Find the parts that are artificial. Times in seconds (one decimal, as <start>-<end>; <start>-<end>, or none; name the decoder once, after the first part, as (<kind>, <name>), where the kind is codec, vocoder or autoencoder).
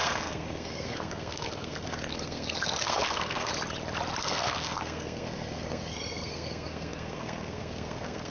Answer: 0.0-3.5 (codec, SNAC); 4.2-8.3